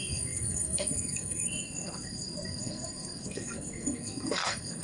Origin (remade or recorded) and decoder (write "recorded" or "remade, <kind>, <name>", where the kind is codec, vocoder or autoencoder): remade, codec, SNAC